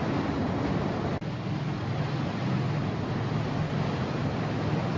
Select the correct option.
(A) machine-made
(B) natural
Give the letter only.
B